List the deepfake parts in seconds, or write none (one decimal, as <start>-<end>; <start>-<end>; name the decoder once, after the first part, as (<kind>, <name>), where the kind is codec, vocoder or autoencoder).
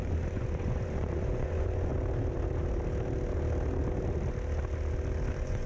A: 0.0-1.9 (vocoder, Vocos); 5.3-5.7